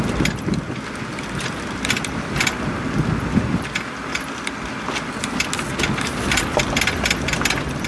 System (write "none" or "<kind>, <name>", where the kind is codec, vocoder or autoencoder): none